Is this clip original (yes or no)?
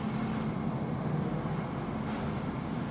yes